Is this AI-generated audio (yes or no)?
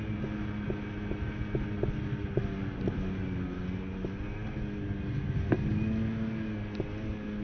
no